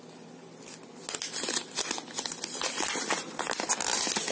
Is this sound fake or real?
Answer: real